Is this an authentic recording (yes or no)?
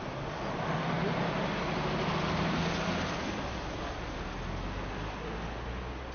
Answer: yes